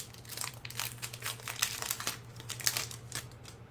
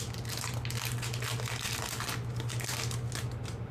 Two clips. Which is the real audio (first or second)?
second